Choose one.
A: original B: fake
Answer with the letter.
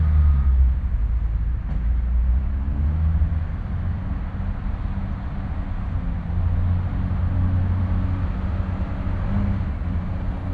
A